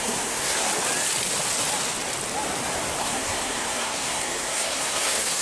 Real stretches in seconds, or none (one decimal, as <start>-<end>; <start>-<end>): 0.7-3.0

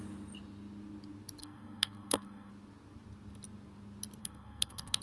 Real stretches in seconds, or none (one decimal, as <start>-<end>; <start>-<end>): 0.0-1.4; 2.5-4.2

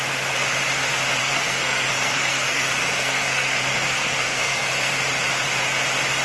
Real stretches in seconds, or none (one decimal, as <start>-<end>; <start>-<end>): 0.0-1.2; 4.9-6.2

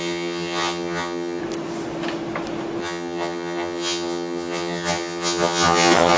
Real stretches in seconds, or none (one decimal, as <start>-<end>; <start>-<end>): 1.4-2.8

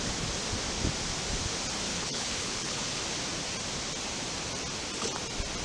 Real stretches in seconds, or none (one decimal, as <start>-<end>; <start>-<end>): 0.0-1.9; 3.0-5.6

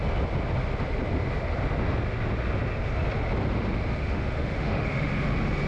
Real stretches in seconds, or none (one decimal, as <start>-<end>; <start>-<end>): 0.0-4.0; 5.1-5.7